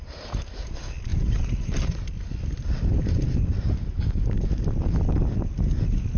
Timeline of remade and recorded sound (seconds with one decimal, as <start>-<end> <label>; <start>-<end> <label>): 0.0-1.1 recorded; 1.1-2.1 remade; 2.1-2.9 recorded; 2.9-5.0 remade; 5.0-6.2 recorded

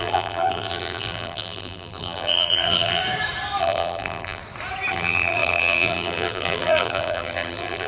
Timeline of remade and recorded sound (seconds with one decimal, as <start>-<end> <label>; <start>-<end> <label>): 0.0-3.0 remade; 3.0-3.6 recorded; 3.6-4.4 remade; 4.4-4.9 recorded; 4.9-7.9 remade